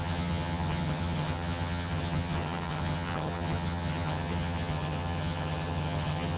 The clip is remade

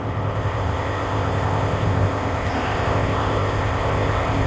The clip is remade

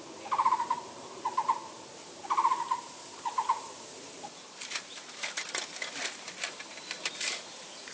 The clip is remade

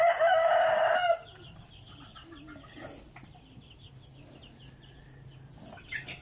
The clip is recorded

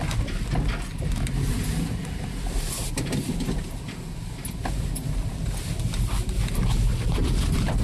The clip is recorded